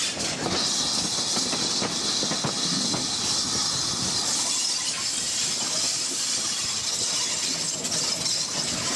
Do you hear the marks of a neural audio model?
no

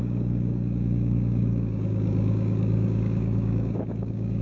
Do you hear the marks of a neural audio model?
yes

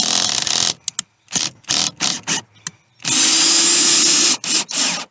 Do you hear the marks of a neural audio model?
no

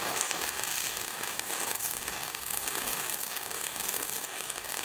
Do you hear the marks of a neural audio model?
yes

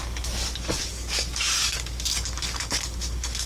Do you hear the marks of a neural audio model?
yes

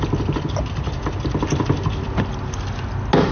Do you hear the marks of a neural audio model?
no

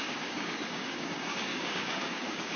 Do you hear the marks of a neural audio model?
yes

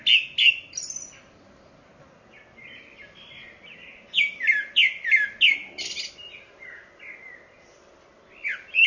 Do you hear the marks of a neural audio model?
no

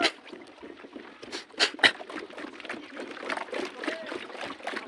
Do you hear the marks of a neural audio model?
no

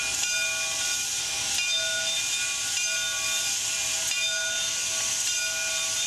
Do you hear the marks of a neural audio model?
no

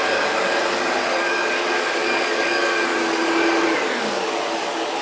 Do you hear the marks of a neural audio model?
yes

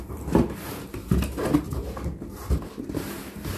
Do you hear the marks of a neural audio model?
no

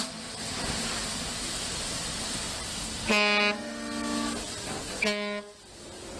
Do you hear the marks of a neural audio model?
no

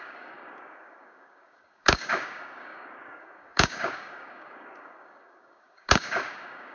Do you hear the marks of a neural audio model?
yes